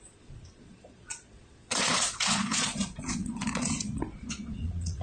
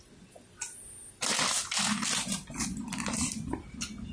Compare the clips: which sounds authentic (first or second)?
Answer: second